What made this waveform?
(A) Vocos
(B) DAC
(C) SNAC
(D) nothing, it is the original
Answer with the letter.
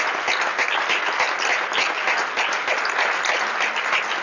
D